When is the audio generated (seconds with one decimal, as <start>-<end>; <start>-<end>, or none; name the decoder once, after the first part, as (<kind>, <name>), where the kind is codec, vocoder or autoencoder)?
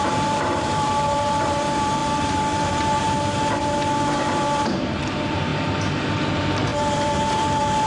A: 0.0-5.5 (vocoder, BigVGAN v2); 6.3-7.9